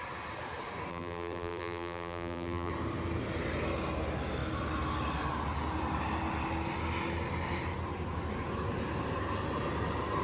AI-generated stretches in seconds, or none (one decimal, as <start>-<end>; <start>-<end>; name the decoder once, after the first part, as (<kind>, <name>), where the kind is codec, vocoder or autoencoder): 0.9-2.7 (vocoder, BigVGAN v2)